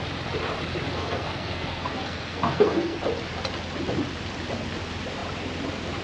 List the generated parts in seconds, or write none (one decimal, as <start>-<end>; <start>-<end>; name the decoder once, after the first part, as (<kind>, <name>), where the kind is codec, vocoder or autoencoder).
0.9-3.0 (codec, SNAC)